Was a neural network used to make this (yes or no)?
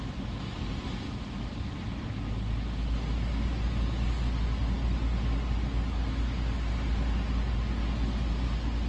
no